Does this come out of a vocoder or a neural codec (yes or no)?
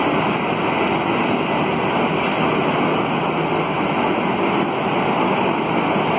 no